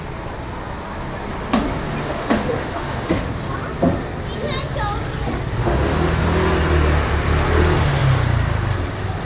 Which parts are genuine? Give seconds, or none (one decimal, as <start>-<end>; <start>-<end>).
0.0-2.0; 3.3-5.6; 6.2-9.2